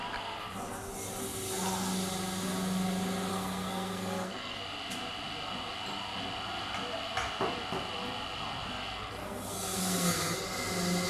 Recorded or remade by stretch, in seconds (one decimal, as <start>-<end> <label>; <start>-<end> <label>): 0.0-3.3 recorded; 3.3-4.6 remade; 4.6-9.2 recorded; 9.2-10.4 remade; 10.4-11.1 recorded

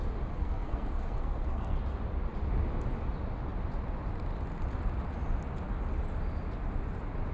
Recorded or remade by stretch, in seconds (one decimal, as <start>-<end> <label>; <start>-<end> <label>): 0.0-0.4 recorded; 0.4-1.8 remade; 1.8-7.3 recorded

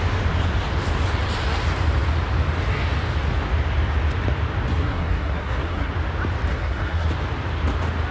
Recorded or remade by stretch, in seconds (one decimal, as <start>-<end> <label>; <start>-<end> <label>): 0.0-4.7 recorded; 4.7-5.9 remade; 5.9-6.5 recorded; 6.5-7.1 remade; 7.1-8.1 recorded

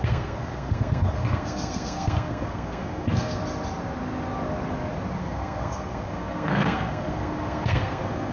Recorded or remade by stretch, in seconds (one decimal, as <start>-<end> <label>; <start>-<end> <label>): 0.0-3.4 remade; 3.4-5.2 recorded; 5.2-8.3 remade

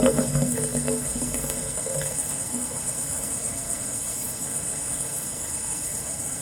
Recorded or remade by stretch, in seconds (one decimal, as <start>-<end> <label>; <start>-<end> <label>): 0.0-6.4 remade

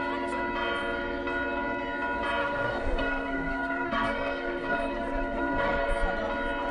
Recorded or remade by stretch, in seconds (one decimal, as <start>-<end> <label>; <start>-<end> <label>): 0.0-2.4 recorded; 2.4-5.9 remade; 5.9-6.7 recorded

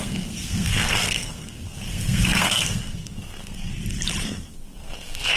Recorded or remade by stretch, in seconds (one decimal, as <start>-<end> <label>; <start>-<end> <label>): 0.0-3.7 remade; 3.7-4.2 recorded; 4.2-5.4 remade

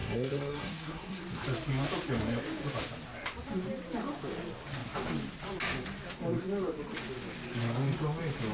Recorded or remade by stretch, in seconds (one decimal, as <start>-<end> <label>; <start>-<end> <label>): 0.0-1.2 remade; 1.2-8.5 recorded